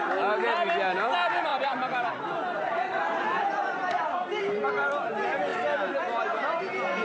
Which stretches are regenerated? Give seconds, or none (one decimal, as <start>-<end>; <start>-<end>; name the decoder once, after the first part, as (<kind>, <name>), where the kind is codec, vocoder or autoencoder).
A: 1.5-4.4 (vocoder, BigVGAN v2)